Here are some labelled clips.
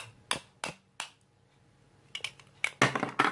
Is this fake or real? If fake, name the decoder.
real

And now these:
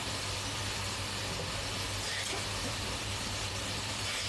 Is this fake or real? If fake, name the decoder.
fake, vocoder, BigVGAN v2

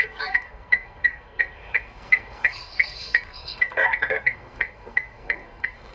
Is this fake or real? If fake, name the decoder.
fake, codec, SNAC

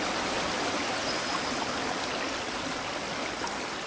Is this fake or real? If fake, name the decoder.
real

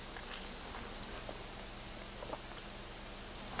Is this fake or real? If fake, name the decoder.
real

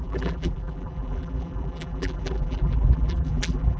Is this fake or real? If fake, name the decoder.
fake, vocoder, BigVGAN v2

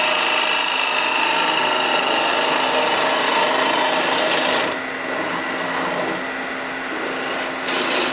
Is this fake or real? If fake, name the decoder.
real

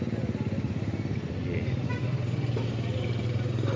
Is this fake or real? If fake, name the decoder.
real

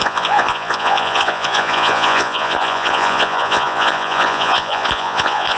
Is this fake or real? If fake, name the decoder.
fake, vocoder, Vocos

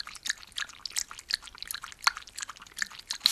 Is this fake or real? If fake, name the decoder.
real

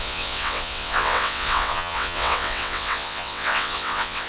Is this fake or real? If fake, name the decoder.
fake, vocoder, WaveNeXt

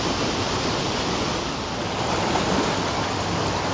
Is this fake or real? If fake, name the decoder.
real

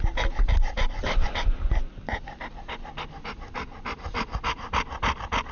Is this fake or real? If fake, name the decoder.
real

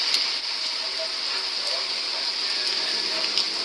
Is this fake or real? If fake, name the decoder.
real